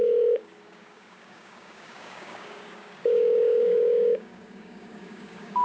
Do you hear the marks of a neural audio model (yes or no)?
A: yes